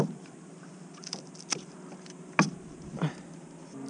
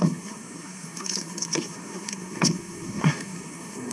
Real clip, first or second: first